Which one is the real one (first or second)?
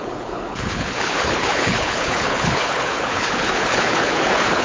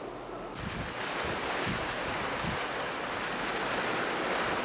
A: second